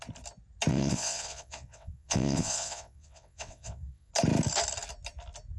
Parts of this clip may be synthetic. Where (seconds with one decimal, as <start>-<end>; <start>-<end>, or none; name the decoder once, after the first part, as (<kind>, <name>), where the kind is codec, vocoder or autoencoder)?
0.7-4.1 (vocoder, WaveNeXt)